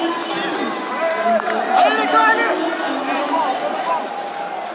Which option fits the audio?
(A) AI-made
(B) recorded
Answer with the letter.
B